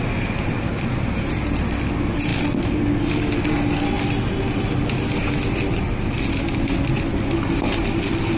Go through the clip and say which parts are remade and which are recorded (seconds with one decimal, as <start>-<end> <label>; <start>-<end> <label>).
0.0-8.4 recorded